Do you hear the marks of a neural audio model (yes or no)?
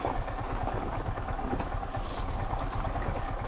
yes